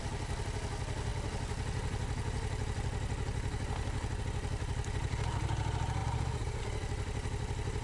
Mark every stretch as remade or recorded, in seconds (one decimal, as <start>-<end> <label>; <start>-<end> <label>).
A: 0.0-6.0 recorded; 6.0-6.6 remade; 6.6-7.8 recorded